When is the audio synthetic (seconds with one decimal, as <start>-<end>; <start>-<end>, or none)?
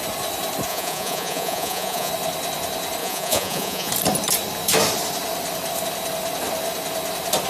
0.7-2.1; 3.0-3.9